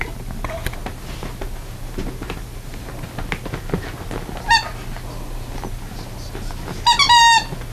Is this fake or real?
real